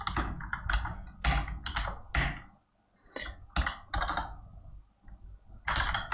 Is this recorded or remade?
recorded